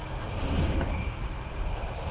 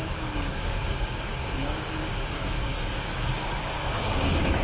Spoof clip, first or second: second